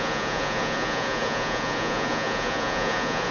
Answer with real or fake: fake